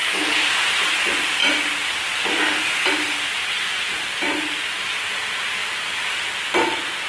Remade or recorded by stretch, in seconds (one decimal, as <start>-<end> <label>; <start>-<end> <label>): 0.0-7.1 recorded